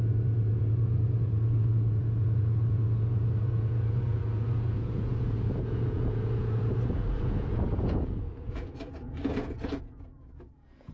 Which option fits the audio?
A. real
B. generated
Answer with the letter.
B